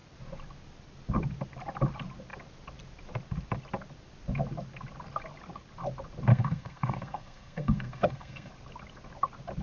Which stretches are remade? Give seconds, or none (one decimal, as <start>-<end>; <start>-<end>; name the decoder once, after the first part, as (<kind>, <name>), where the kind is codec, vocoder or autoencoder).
6.3-8.5 (codec, SNAC)